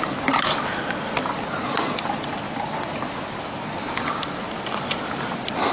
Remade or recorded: recorded